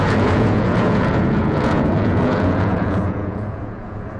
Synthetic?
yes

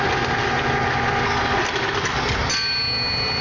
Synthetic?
no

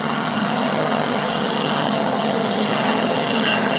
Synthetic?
yes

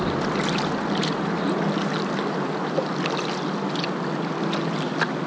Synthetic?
no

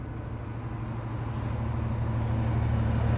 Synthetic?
no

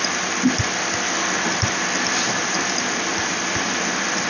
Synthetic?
no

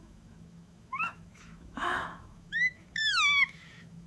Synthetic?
yes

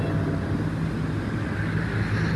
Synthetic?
no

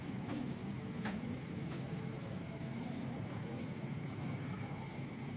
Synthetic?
yes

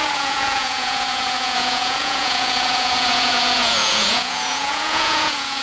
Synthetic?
yes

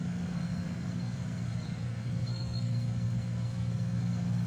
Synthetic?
yes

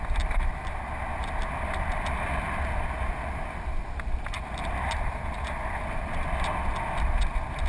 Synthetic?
no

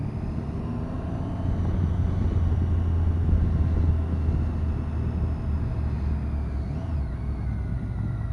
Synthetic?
no